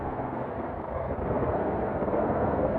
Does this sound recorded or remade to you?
remade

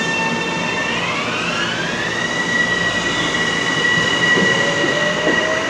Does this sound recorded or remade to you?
recorded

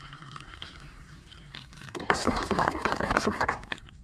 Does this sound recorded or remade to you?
remade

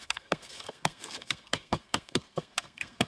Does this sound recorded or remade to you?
remade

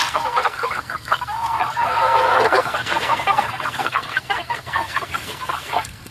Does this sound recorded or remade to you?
remade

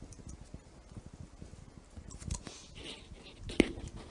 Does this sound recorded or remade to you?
recorded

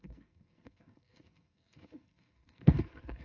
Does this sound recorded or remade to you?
remade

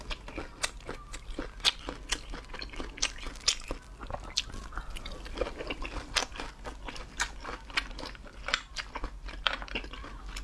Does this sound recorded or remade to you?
recorded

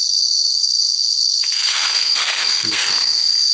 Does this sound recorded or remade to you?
remade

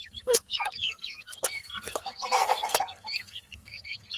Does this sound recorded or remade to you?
remade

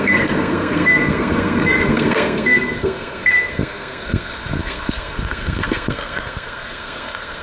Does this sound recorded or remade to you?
remade